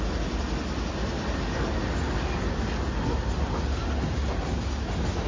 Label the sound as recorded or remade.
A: recorded